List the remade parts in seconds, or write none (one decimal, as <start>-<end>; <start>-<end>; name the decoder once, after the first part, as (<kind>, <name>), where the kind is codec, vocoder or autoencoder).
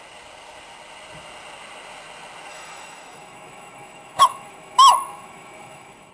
2.5-6.1 (autoencoder, DAC-VAE)